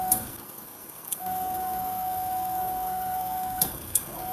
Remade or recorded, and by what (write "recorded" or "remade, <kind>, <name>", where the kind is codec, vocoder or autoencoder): remade, codec, SNAC